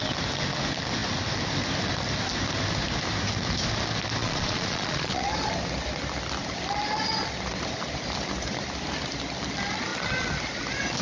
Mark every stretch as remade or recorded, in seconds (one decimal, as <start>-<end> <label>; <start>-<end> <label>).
0.0-4.2 recorded; 4.2-5.3 remade; 5.3-11.0 recorded